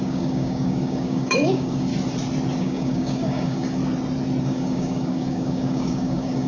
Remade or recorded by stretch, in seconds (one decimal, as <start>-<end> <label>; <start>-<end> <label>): 0.0-1.9 remade; 1.9-2.6 recorded; 2.6-3.8 remade; 3.8-4.4 recorded; 4.4-6.5 remade